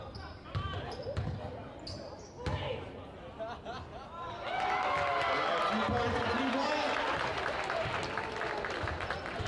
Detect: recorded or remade recorded